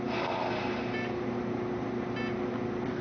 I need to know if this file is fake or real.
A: real